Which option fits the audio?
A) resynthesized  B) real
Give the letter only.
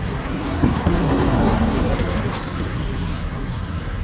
A